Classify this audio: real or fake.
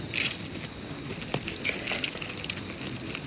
real